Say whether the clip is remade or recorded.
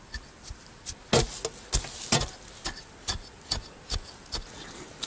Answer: recorded